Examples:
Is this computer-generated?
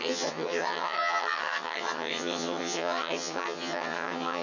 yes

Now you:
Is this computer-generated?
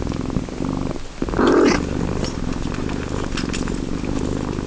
no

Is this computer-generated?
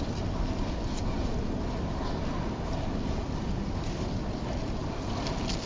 no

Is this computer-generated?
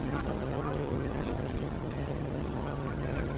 yes